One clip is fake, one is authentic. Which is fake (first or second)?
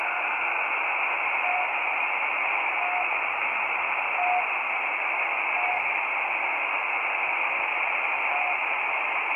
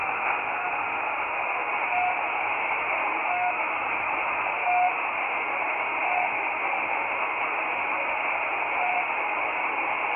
second